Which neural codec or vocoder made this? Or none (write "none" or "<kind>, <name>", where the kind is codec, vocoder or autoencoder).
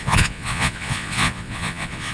vocoder, Vocos